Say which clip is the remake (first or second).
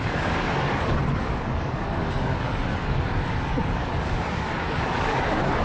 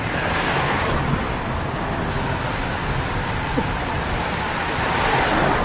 first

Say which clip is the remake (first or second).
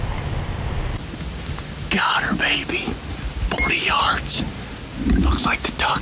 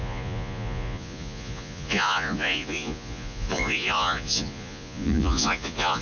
second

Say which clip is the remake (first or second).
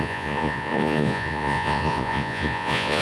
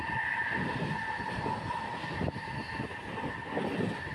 first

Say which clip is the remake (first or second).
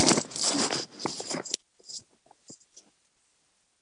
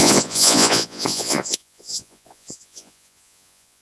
second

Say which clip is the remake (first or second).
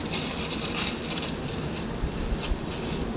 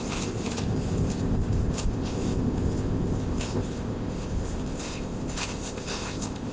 second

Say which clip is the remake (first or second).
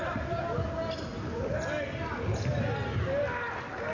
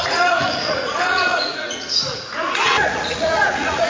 second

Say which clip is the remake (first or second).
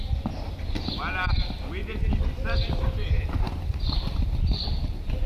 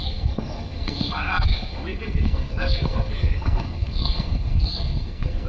second